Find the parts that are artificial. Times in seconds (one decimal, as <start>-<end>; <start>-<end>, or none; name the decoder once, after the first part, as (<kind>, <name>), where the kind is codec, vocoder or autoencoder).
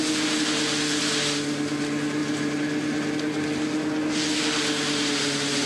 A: 2.2-3.1 (vocoder, BigVGAN v2)